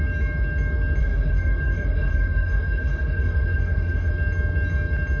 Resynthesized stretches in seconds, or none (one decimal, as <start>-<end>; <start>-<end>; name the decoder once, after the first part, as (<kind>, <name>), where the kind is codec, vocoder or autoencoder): 1.0-4.1 (autoencoder, DAC-VAE)